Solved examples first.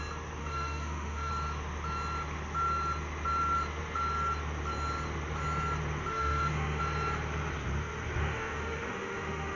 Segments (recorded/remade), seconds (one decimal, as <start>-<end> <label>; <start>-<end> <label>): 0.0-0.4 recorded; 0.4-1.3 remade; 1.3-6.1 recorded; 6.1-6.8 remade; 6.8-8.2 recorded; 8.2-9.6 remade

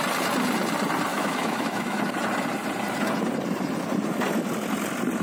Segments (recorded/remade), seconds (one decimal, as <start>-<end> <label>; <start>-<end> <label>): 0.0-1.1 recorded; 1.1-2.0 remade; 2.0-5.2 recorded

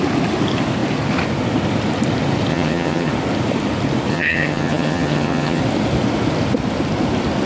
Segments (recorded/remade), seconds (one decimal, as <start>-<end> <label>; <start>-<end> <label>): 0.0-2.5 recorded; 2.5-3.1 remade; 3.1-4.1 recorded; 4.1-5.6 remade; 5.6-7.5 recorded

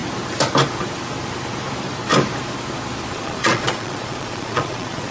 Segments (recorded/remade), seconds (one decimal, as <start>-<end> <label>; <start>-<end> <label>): 0.0-3.1 recorded; 3.1-5.1 remade